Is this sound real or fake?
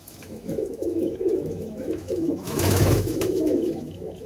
fake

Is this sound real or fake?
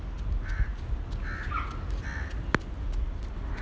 real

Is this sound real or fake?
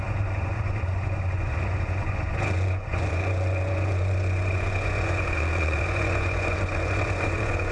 fake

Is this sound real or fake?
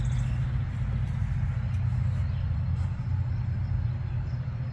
real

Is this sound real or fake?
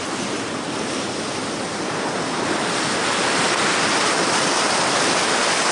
real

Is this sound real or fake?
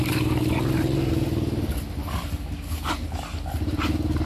real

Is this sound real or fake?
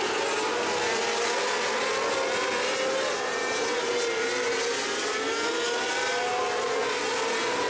real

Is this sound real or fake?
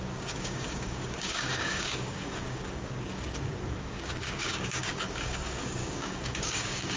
fake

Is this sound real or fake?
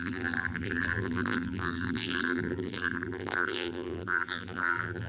fake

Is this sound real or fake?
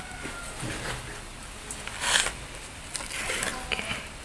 real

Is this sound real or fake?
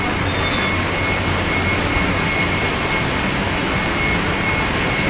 real